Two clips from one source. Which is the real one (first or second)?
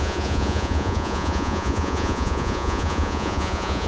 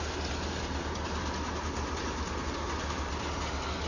second